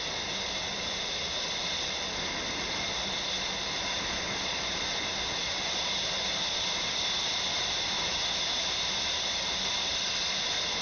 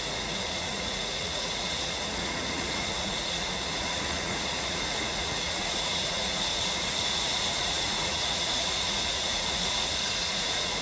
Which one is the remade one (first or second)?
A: second